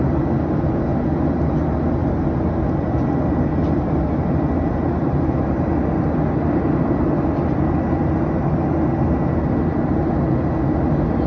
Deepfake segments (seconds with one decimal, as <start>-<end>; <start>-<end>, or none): none